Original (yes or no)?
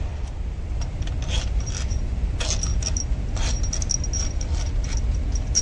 yes